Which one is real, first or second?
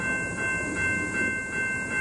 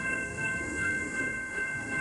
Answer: first